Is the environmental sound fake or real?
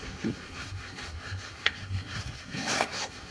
fake